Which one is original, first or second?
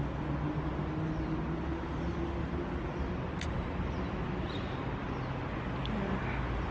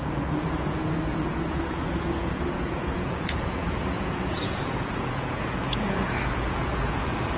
first